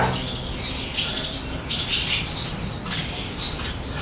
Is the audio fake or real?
real